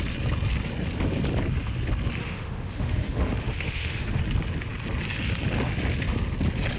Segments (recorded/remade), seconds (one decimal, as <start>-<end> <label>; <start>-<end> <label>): 0.0-2.2 recorded; 2.2-4.2 remade; 4.2-6.8 recorded